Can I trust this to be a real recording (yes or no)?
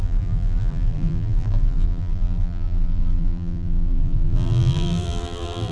no